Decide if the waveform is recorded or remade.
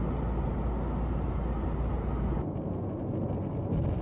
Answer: recorded